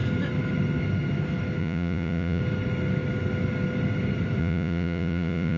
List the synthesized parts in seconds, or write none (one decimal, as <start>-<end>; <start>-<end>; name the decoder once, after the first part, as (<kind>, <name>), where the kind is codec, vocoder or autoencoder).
1.6-2.4 (vocoder, Vocos); 4.4-5.6